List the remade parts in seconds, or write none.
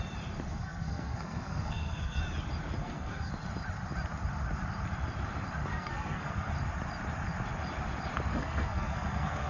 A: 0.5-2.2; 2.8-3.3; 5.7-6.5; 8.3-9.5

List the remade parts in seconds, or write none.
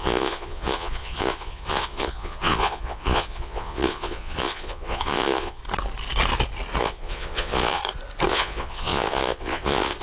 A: 0.0-5.6; 6.8-7.8; 8.3-10.0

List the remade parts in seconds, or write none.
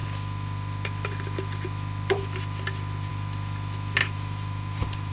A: 4.0-5.1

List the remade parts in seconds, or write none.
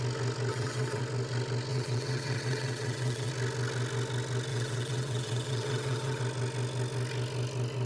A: 0.5-1.0; 1.7-3.3; 4.5-6.2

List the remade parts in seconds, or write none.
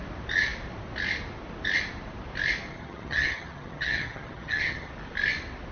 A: 2.7-4.9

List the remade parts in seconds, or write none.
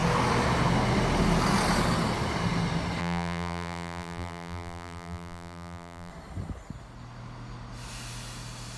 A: 3.0-6.1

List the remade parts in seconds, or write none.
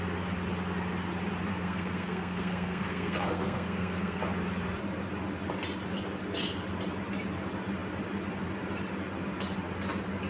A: 1.5-4.2